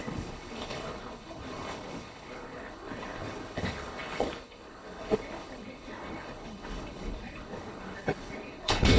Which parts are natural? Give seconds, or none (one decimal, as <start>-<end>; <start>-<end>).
none